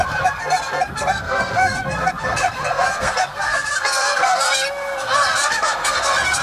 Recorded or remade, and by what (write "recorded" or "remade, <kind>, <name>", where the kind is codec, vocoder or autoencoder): remade, codec, SNAC